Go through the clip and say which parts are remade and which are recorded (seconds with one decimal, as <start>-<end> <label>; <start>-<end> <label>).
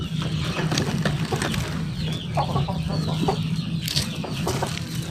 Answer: 0.0-5.1 recorded